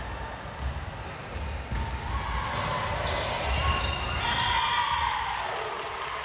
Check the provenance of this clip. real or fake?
real